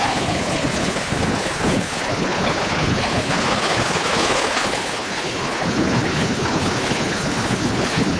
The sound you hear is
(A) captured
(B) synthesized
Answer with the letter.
B